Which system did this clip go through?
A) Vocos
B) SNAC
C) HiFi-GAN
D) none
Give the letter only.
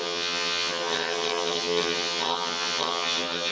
C